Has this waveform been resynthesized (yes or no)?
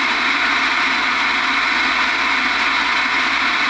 no